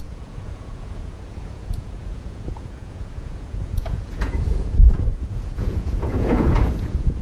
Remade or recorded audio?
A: remade